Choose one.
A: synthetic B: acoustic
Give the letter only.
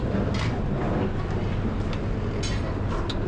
B